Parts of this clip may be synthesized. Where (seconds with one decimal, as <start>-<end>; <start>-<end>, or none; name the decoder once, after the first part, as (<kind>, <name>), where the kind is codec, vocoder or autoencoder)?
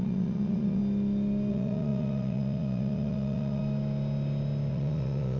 0.0-0.8 (vocoder, Vocos); 1.5-3.6; 4.7-5.4